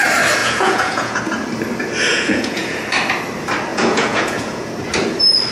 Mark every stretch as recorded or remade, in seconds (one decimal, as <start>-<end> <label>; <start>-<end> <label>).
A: 0.0-0.4 recorded; 0.4-1.2 remade; 1.2-2.1 recorded; 2.1-2.8 remade; 2.8-3.7 recorded; 3.7-4.7 remade; 4.7-5.5 recorded